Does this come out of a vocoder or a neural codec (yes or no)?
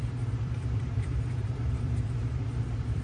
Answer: yes